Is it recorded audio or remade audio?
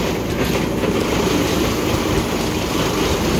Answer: recorded